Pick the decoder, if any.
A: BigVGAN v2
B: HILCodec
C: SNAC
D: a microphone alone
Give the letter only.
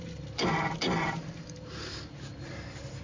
A